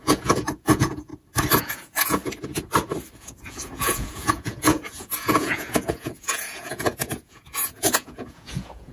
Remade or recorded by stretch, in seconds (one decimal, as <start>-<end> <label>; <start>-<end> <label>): 0.0-1.1 remade; 1.1-1.6 recorded; 1.6-2.2 remade; 2.2-3.2 recorded; 3.2-8.9 remade